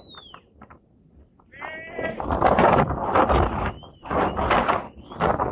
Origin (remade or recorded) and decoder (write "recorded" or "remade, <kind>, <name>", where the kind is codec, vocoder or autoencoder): recorded